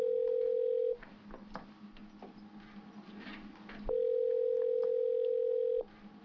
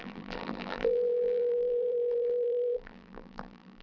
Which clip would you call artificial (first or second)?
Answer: second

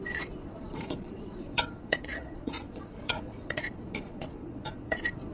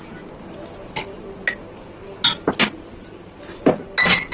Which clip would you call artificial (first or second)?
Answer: first